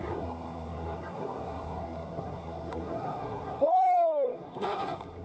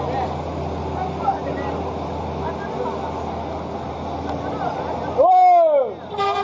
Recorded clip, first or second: second